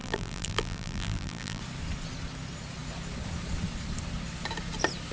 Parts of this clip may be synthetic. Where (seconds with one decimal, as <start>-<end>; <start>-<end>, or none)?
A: 0.0-1.6